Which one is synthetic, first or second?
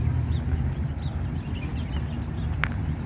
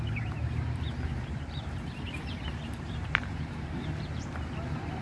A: second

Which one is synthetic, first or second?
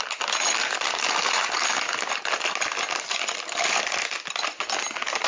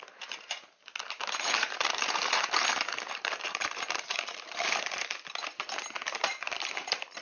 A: second